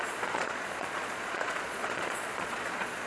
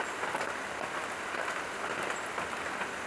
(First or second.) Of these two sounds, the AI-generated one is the first